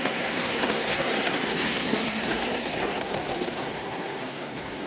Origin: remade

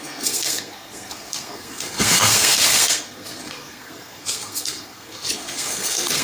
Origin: remade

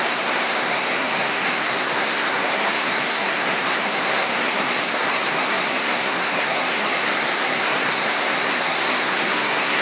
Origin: remade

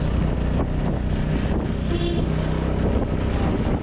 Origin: recorded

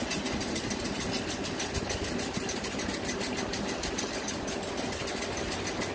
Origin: recorded